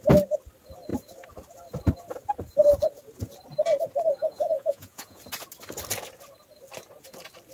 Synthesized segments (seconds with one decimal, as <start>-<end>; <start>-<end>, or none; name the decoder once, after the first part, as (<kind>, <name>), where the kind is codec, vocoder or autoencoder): 4.2-5.2 (vocoder, Vocos)